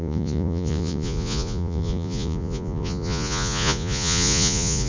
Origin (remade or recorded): remade